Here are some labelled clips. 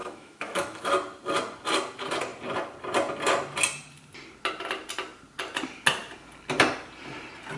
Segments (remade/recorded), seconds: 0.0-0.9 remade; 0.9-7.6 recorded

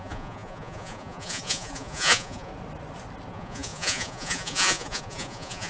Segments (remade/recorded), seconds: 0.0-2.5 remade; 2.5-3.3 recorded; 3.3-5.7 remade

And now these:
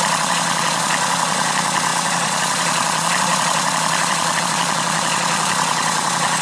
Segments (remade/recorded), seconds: 0.0-6.4 remade

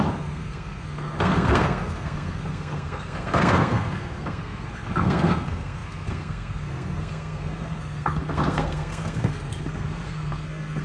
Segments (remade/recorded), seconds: 0.0-10.8 remade